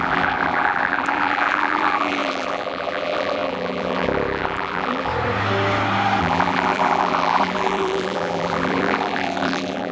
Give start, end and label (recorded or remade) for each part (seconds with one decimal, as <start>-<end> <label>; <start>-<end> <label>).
0.0-5.1 remade; 5.1-6.2 recorded; 6.2-9.9 remade